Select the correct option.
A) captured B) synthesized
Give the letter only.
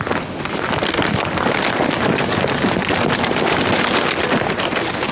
A